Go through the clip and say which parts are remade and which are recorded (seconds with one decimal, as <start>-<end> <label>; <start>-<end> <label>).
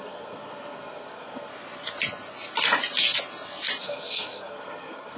0.0-1.5 remade; 1.5-3.8 recorded; 3.8-5.2 remade